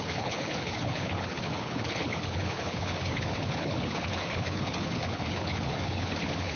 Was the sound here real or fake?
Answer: fake